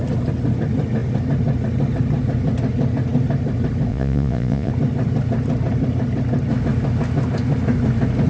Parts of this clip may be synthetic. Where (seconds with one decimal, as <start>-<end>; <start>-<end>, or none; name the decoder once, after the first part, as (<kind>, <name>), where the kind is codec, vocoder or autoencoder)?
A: 3.9-4.7 (vocoder, Vocos)